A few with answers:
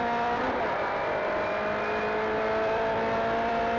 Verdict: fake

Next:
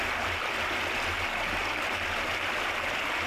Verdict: real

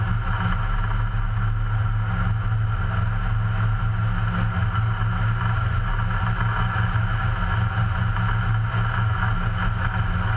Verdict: real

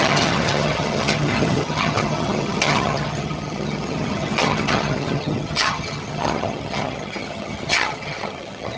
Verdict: fake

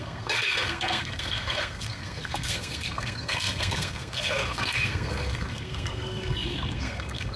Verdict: fake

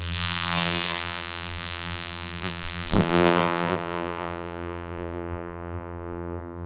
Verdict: fake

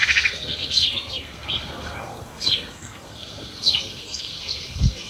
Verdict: fake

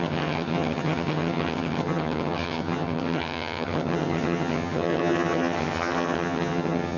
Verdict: fake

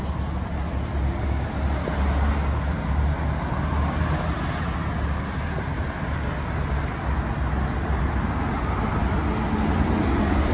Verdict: real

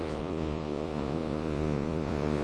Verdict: fake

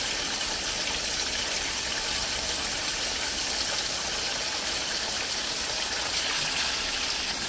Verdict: real